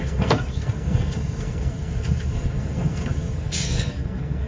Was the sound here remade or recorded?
remade